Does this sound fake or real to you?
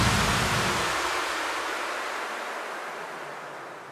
real